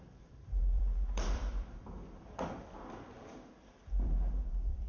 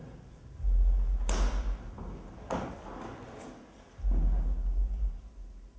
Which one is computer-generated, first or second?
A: first